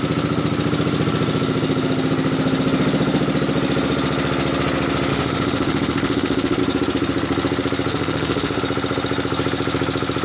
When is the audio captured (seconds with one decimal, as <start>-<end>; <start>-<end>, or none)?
0.0-5.1; 6.6-7.9; 8.6-10.2